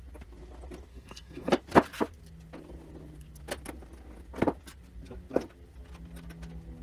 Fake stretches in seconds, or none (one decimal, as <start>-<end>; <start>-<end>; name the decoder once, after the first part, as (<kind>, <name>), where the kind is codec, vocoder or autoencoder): 0.9-1.5 (codec, SNAC)